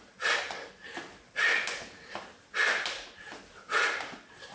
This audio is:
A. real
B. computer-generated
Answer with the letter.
A